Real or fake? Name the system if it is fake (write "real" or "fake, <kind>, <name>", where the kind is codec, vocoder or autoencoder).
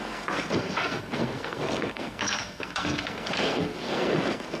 fake, codec, SNAC